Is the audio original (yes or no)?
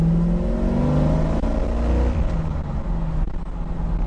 yes